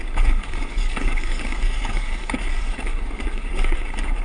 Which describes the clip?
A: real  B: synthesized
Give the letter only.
B